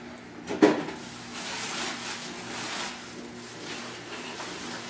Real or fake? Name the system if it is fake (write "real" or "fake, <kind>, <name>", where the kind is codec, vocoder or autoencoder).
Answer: real